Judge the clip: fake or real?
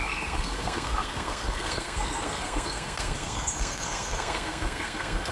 fake